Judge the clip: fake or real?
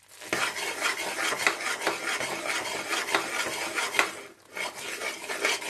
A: real